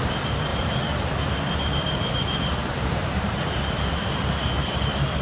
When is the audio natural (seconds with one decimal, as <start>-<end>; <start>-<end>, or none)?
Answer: 0.0-0.5; 1.1-2.6; 3.5-5.2